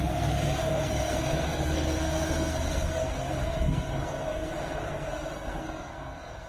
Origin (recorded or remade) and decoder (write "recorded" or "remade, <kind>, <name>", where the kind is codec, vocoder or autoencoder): remade, codec, SNAC